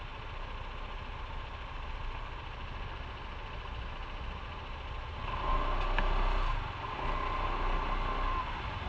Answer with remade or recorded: recorded